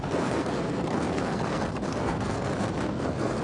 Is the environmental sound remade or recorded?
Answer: remade